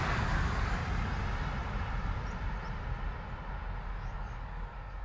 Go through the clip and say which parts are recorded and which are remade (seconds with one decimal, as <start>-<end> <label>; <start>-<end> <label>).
0.0-0.8 remade; 0.8-3.8 recorded; 3.8-5.0 remade